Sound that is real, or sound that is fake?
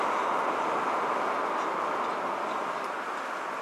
real